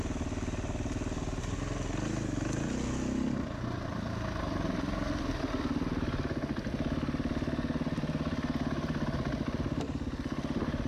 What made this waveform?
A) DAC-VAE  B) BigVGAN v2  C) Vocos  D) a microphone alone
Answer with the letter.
D